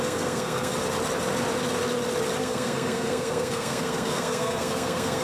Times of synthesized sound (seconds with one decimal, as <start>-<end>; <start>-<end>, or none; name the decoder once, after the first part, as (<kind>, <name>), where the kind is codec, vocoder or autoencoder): 0.0-0.7 (codec, SNAC); 2.4-5.2